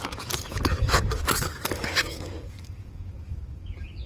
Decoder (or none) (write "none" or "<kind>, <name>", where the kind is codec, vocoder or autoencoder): codec, DAC